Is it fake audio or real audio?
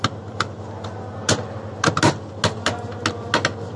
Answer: real